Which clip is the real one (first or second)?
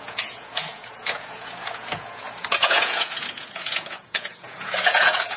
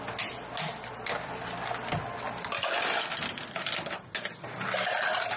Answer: second